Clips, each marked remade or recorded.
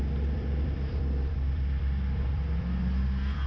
remade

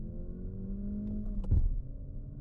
remade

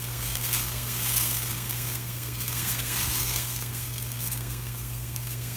remade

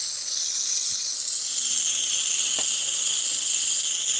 recorded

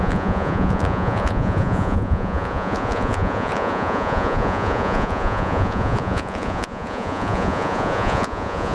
remade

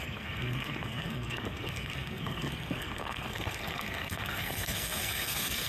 remade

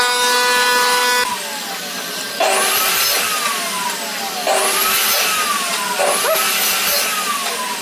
recorded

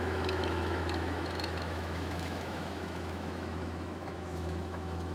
remade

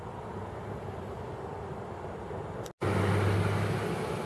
recorded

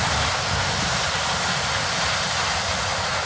recorded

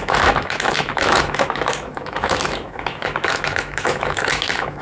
remade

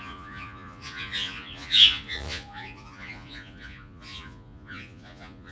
remade